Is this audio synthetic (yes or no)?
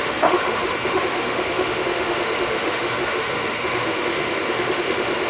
yes